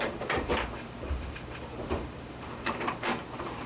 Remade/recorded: remade